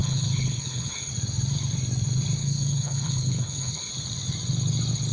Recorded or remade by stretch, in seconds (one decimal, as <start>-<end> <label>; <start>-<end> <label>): 0.0-1.1 remade; 1.1-2.4 recorded; 2.4-3.9 remade; 3.9-5.1 recorded